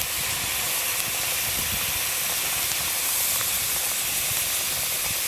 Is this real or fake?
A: real